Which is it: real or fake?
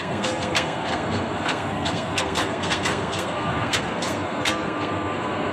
fake